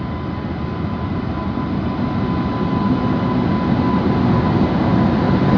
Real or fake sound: real